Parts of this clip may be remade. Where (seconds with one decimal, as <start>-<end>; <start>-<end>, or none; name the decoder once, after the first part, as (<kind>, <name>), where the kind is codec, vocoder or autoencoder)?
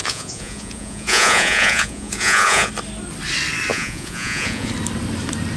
0.0-2.7 (vocoder, Vocos); 3.7-4.7